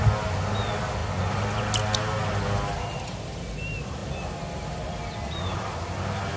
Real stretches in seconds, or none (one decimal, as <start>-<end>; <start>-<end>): 0.0-6.4

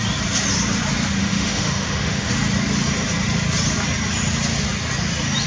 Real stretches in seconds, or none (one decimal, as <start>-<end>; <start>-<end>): 0.0-1.2; 2.3-5.5